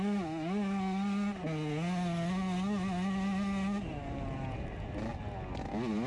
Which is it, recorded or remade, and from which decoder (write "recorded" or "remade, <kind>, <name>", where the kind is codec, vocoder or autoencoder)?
recorded